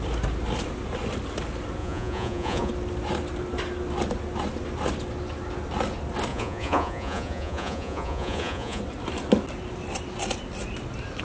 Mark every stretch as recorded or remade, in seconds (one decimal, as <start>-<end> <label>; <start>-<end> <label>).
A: 0.0-1.8 recorded; 1.8-2.7 remade; 2.7-6.3 recorded; 6.3-8.8 remade; 8.8-11.2 recorded